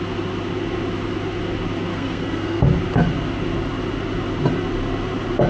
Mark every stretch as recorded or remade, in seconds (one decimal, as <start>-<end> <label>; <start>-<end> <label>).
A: 0.0-1.9 recorded; 1.9-2.6 remade; 2.6-5.5 recorded